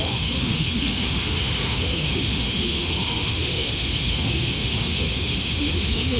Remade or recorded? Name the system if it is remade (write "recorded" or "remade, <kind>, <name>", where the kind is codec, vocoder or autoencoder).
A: remade, autoencoder, DAC-VAE